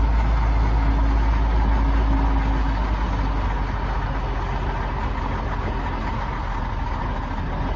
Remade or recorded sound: recorded